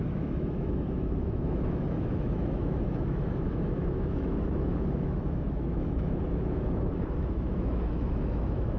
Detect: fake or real fake